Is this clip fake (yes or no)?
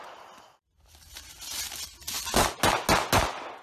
no